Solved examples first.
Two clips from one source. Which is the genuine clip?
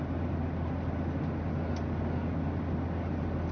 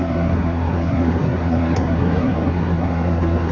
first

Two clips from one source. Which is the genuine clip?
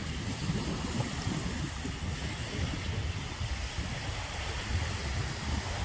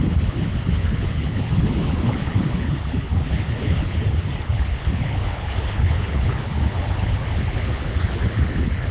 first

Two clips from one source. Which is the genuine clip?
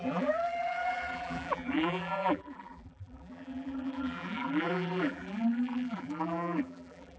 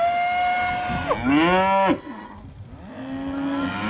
second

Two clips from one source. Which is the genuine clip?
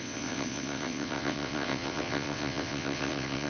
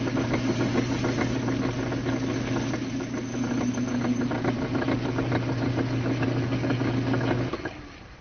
second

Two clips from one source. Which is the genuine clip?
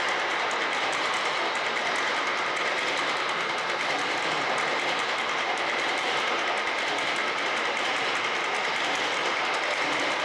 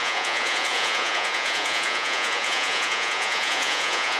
first